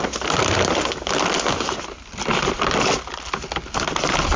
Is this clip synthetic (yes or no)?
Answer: no